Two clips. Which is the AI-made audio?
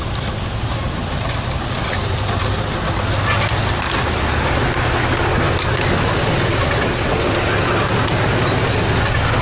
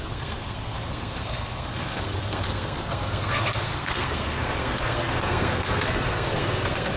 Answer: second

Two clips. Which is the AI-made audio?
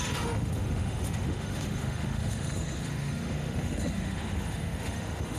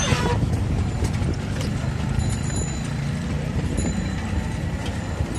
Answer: first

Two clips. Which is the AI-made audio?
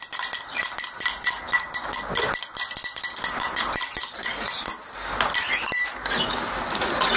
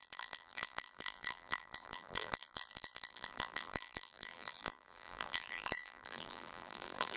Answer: second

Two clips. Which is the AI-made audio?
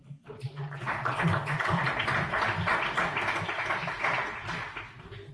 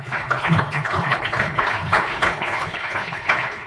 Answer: second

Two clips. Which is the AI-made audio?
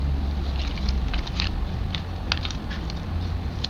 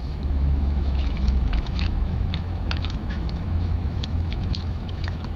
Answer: second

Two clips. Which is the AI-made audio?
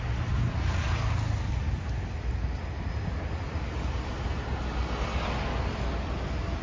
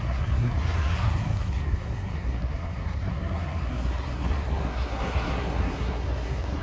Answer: second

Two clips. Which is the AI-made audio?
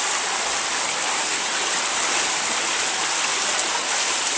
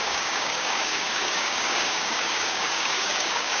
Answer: second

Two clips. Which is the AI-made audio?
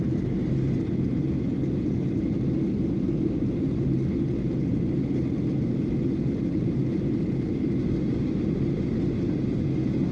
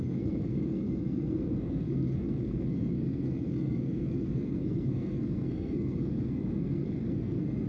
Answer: second